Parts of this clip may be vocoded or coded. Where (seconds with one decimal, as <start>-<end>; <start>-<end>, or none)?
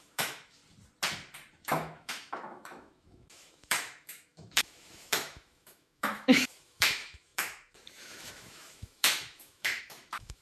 0.0-0.6; 1.5-10.4